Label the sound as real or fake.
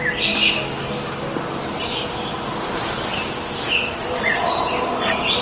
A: real